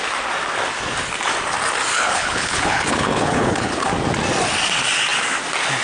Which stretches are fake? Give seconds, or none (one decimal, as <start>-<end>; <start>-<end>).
1.9-3.9